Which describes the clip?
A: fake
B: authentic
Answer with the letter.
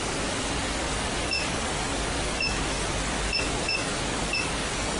A